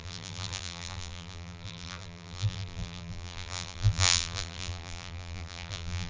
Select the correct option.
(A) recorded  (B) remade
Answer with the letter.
B